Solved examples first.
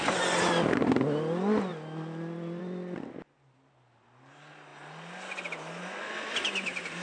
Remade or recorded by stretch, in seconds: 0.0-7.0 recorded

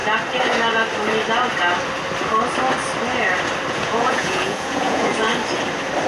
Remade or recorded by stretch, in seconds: 0.0-3.7 recorded; 3.7-5.3 remade; 5.3-6.1 recorded

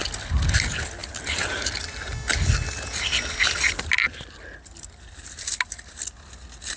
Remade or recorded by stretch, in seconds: 0.0-6.8 recorded

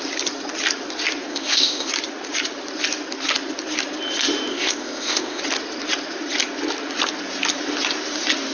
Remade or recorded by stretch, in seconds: 0.0-1.3 recorded; 1.3-1.9 remade; 1.9-4.5 recorded; 4.5-5.4 remade; 5.4-8.5 recorded

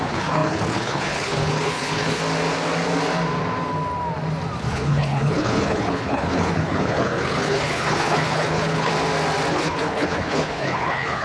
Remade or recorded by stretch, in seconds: 0.0-2.2 remade; 2.2-4.6 recorded; 4.6-8.9 remade; 8.9-9.5 recorded; 9.5-11.2 remade

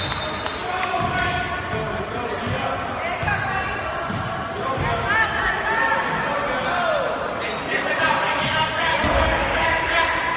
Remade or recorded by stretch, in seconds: 0.0-8.9 recorded; 8.9-9.8 remade; 9.8-10.4 recorded

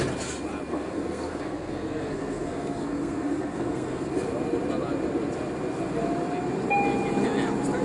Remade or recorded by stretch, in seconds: 0.0-0.7 recorded; 0.7-4.1 remade; 4.1-7.8 recorded

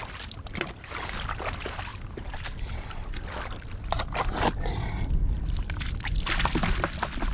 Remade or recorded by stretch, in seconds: 0.0-7.3 recorded